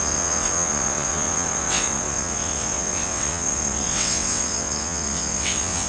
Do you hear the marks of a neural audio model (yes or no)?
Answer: yes